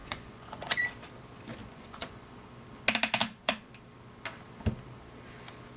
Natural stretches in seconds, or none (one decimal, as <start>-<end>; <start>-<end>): 0.8-1.6; 2.5-3.2; 3.7-5.8